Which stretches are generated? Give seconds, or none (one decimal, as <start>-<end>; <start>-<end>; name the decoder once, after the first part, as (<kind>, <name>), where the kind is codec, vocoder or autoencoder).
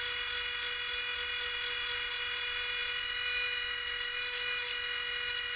none